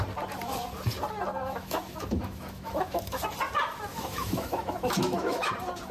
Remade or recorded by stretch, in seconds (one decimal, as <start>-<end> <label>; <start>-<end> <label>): 0.0-1.4 recorded; 1.4-3.2 remade; 3.2-3.9 recorded; 3.9-5.5 remade; 5.5-5.9 recorded